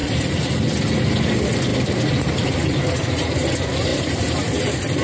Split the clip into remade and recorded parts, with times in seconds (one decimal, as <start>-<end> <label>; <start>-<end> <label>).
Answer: 0.0-0.5 remade; 0.5-1.7 recorded; 1.7-3.1 remade; 3.1-3.9 recorded; 3.9-4.5 remade; 4.5-5.0 recorded